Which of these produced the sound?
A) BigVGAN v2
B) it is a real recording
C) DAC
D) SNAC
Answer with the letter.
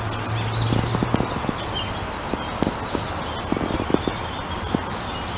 B